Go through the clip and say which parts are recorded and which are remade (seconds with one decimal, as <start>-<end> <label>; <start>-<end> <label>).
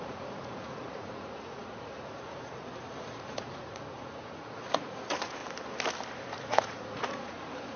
0.0-5.4 remade; 5.4-6.2 recorded; 6.2-7.8 remade